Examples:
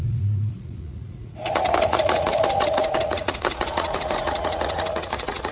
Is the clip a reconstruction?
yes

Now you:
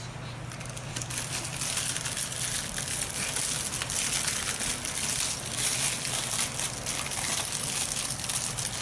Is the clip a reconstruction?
no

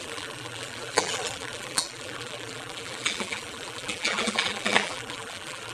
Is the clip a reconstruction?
yes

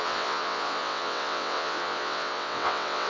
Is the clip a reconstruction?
yes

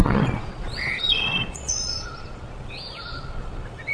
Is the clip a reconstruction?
yes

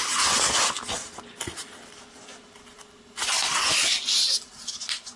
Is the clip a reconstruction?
no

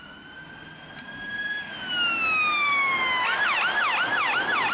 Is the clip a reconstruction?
no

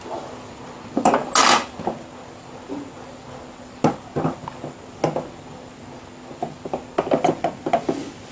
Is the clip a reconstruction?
no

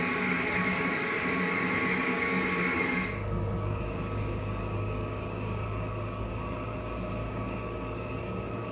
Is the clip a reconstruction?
yes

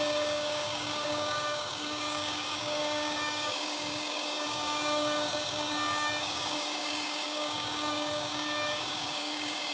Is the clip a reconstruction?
yes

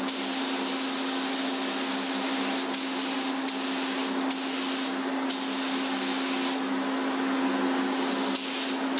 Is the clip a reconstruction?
no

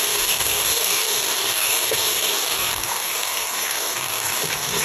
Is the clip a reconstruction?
yes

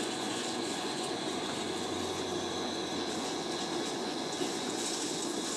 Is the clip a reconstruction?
yes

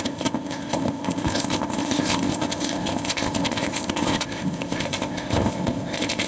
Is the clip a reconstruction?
yes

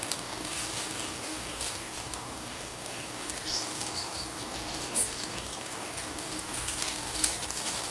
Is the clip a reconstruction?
yes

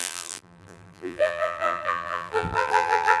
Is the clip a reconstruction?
yes